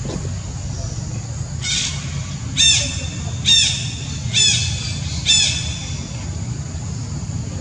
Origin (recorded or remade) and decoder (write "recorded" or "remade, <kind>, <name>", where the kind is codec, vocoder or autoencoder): recorded